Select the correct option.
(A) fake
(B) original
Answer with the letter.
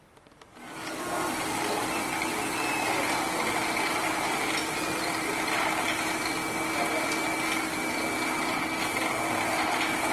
B